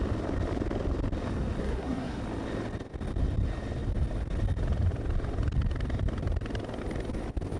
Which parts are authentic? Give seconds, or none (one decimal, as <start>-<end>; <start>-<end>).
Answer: 0.0-1.6; 2.2-7.6